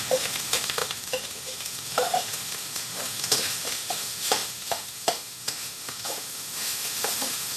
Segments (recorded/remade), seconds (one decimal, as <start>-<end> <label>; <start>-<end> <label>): 0.0-7.6 remade